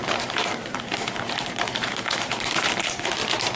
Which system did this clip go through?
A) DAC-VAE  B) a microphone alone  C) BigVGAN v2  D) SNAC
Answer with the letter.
C